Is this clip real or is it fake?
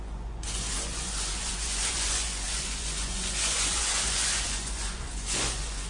fake